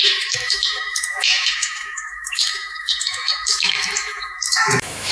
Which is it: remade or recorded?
remade